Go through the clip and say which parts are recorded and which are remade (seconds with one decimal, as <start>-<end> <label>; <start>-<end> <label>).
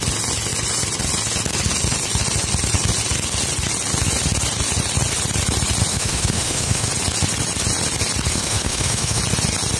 0.0-5.9 recorded; 5.9-6.9 remade; 6.9-8.3 recorded; 8.3-9.2 remade; 9.2-9.8 recorded